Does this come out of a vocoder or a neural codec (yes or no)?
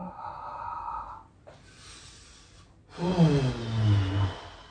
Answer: no